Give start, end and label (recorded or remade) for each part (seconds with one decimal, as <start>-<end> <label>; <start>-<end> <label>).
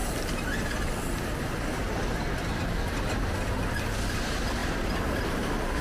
0.0-5.8 recorded